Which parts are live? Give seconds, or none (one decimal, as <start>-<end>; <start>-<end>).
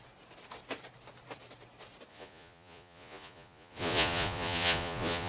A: 0.0-2.1